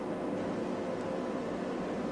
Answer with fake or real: real